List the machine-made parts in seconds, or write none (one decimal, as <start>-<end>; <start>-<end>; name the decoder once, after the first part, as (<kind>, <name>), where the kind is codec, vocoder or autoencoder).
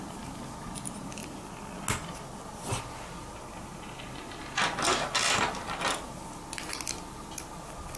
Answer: none